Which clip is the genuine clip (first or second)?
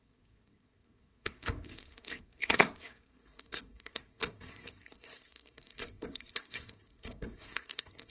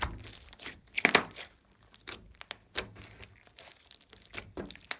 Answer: second